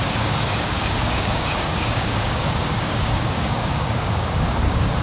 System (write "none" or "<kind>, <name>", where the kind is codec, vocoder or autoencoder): codec, DAC